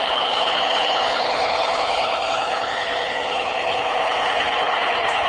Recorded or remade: remade